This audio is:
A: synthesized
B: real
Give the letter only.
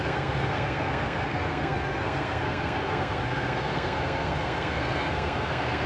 A